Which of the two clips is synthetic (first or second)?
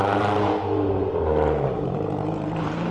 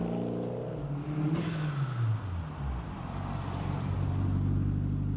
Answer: first